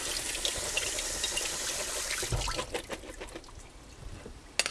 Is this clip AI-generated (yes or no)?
no